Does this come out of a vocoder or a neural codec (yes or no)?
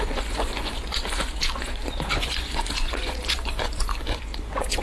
yes